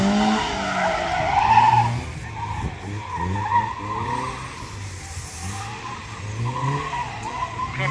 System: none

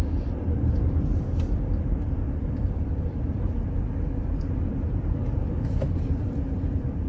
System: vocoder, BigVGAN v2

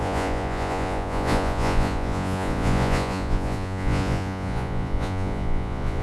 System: vocoder, Vocos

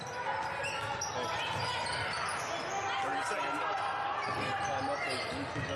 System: none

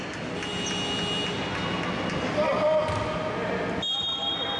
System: none